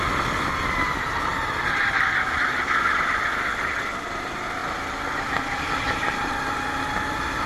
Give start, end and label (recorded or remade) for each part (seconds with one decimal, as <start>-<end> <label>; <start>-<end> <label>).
0.0-7.5 recorded